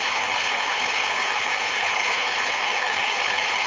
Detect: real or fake fake